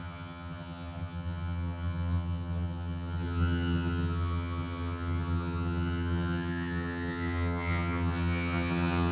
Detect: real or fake fake